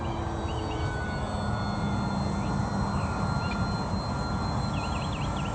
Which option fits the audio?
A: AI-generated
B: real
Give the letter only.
B